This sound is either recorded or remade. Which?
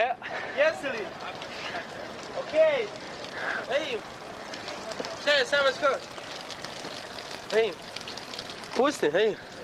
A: recorded